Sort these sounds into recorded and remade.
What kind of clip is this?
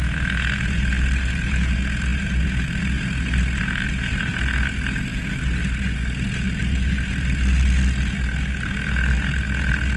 recorded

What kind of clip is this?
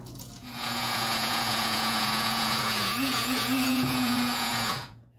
remade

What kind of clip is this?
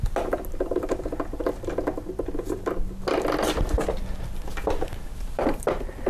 recorded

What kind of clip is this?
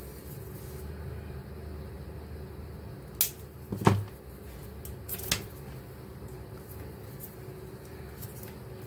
recorded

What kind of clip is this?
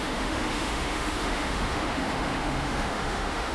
remade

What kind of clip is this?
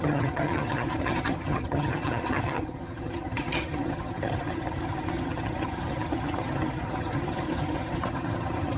remade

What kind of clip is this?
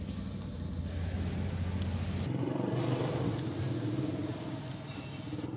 recorded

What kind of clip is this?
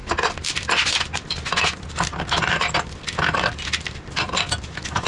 recorded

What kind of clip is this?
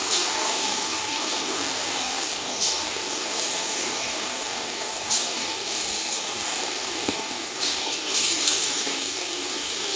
remade